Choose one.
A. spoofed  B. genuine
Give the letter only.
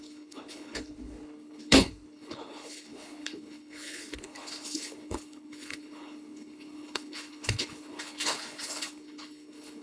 A